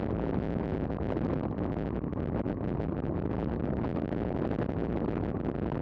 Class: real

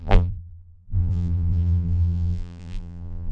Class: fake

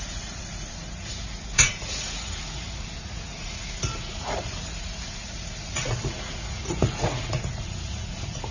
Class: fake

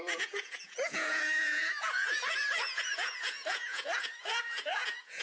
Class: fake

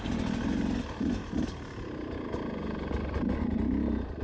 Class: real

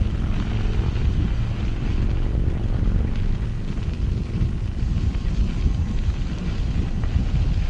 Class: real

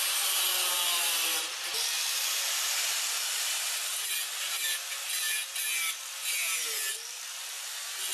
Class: real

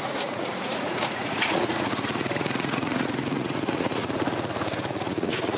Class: fake